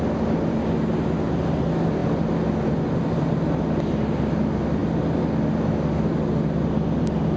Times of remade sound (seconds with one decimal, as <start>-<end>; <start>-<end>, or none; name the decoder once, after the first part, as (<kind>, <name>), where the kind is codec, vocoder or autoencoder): none